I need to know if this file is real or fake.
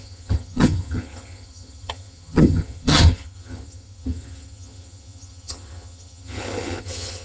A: fake